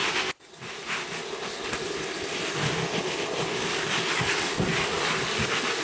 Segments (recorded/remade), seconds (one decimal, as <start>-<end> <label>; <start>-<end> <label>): 0.0-3.6 recorded; 3.6-5.8 remade

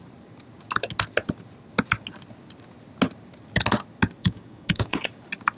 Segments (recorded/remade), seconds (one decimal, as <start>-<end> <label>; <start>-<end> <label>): 0.0-4.2 recorded; 4.2-5.1 remade; 5.1-5.6 recorded

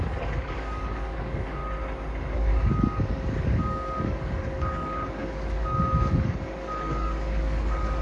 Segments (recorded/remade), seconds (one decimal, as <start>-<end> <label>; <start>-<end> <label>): 0.0-1.6 remade; 1.6-2.3 recorded; 2.3-8.0 remade